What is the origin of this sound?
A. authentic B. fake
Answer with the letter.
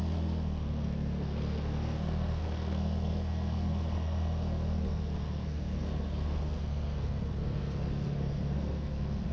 B